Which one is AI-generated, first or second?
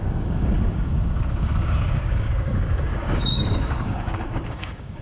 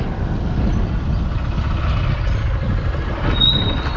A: first